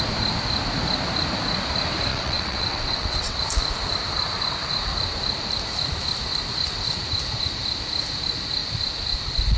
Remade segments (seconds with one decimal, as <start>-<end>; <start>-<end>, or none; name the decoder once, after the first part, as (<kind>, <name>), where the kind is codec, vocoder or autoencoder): 2.1-3.4 (vocoder, WaveNeXt)